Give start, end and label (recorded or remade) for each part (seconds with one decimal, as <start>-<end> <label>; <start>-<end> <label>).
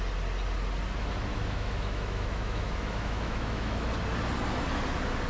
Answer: 0.0-1.3 recorded; 1.3-3.9 remade; 3.9-5.3 recorded